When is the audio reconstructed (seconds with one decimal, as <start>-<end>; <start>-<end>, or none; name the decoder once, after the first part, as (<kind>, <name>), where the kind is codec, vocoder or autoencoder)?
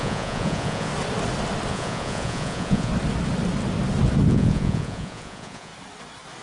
0.0-0.9 (vocoder, Vocos); 1.7-2.9; 4.3-5.7